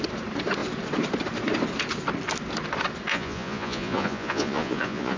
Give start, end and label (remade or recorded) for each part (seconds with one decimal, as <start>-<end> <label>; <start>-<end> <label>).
0.0-3.1 recorded; 3.1-5.2 remade